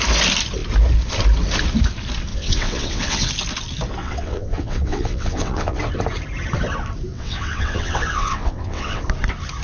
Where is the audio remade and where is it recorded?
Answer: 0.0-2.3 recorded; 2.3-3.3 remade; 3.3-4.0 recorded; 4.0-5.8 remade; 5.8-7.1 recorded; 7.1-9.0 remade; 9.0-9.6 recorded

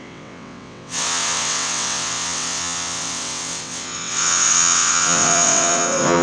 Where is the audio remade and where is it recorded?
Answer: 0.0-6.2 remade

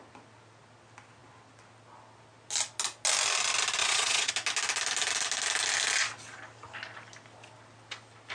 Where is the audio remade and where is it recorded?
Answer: 0.0-3.8 recorded; 3.8-4.3 remade; 4.3-8.3 recorded

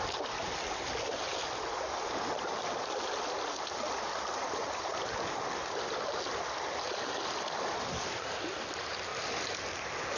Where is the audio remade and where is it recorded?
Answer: 0.0-10.2 recorded

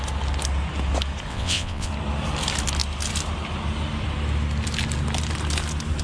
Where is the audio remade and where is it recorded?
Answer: 0.0-1.3 recorded; 1.3-1.9 remade; 1.9-6.0 recorded

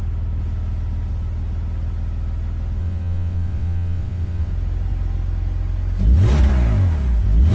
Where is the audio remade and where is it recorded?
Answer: 0.0-2.8 recorded; 2.8-4.5 remade; 4.5-7.5 recorded